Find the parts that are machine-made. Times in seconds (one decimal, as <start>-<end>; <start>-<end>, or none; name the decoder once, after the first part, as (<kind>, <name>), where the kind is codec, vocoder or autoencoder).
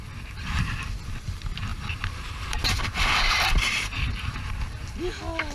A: 1.7-5.0 (vocoder, BigVGAN v2)